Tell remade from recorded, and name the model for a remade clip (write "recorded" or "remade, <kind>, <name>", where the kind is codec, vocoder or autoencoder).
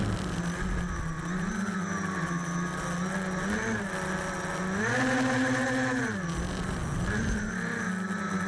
recorded